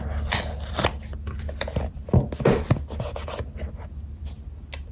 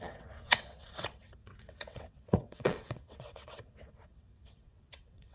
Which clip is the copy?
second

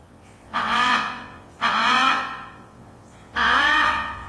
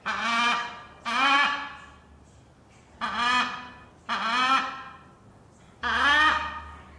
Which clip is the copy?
first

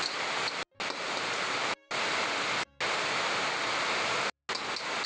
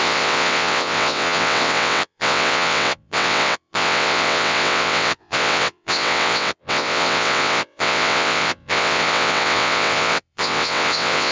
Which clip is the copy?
second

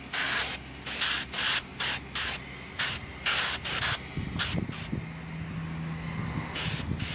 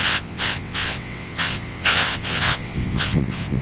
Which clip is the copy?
second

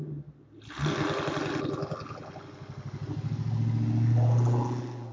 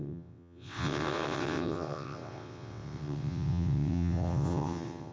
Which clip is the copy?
second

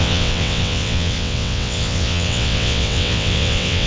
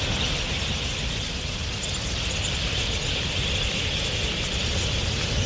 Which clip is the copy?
first